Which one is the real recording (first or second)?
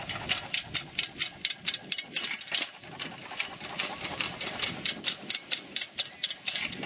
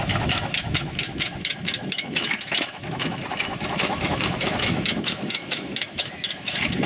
first